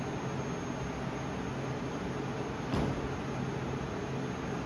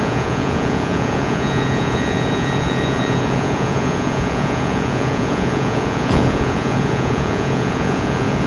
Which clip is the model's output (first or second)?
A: second